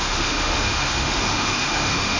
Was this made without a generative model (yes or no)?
no